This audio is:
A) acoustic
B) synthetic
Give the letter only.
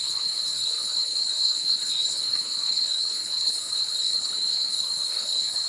B